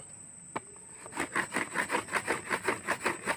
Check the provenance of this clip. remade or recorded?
recorded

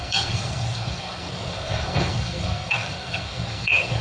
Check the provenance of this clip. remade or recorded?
remade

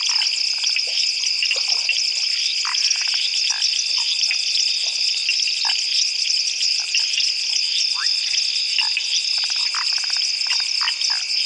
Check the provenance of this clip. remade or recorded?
recorded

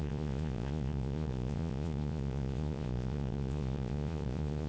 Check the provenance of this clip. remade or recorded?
remade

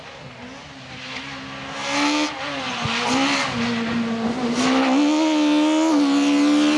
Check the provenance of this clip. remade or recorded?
recorded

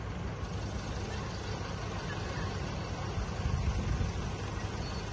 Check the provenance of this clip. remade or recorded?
recorded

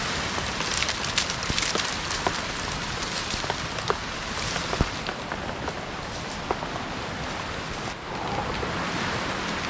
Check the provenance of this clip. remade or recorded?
recorded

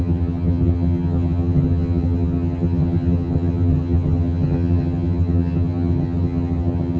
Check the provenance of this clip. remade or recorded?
remade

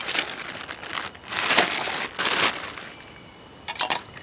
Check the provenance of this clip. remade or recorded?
recorded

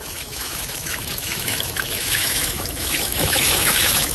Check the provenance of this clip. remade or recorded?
remade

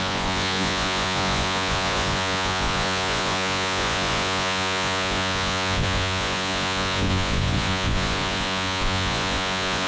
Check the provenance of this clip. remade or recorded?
remade